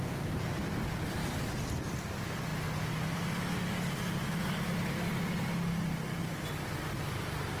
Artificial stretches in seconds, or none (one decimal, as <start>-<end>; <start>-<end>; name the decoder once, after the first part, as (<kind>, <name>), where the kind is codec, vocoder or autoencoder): none